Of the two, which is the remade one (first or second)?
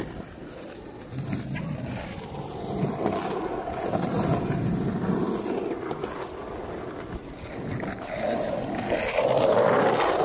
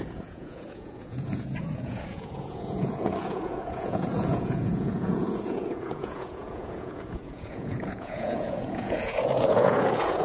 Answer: second